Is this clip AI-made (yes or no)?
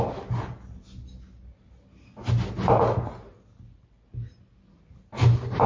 no